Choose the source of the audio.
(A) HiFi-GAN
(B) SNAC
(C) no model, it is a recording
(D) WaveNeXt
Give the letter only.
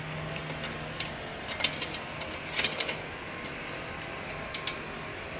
C